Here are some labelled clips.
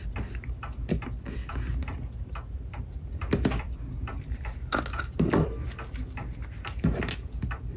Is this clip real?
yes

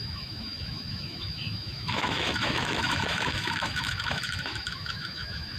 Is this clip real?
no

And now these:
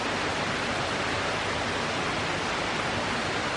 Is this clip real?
yes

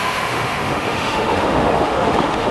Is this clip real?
no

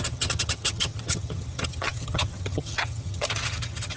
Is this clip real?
no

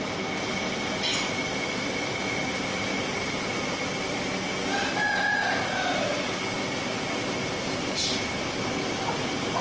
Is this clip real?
yes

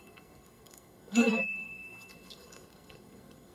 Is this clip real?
no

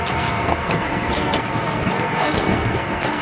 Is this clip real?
no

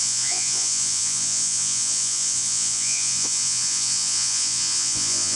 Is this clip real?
no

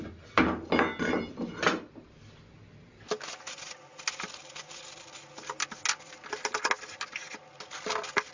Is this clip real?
yes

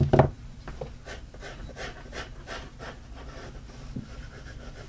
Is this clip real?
yes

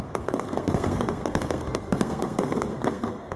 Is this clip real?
no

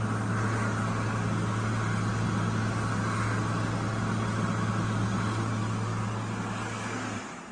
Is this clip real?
yes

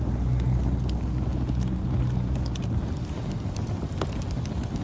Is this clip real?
yes